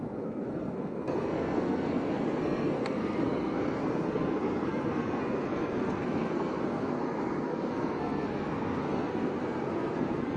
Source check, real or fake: fake